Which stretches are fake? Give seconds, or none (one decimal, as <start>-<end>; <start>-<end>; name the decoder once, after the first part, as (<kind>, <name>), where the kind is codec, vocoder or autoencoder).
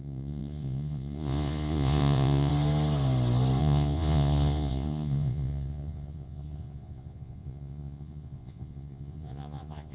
0.0-2.5 (vocoder, Vocos); 3.6-9.9